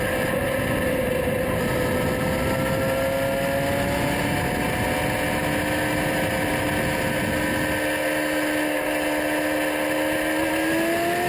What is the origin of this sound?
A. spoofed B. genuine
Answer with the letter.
B